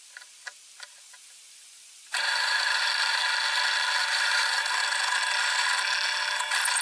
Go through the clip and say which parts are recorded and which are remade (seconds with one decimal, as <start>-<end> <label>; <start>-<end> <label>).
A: 0.0-1.0 recorded; 1.0-3.2 remade; 3.2-4.0 recorded; 4.0-4.8 remade; 4.8-6.8 recorded